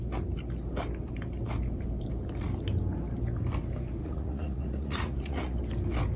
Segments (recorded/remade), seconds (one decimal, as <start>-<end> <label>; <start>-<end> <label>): 0.0-4.0 recorded; 4.0-5.6 remade; 5.6-6.2 recorded